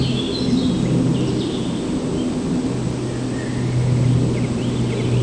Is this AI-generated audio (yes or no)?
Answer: no